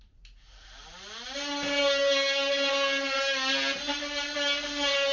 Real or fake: real